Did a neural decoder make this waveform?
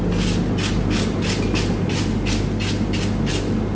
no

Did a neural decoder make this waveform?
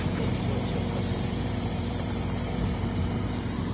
yes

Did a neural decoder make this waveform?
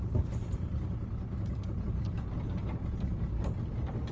no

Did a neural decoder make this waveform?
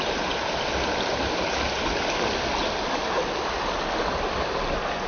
no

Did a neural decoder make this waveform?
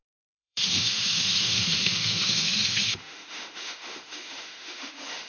yes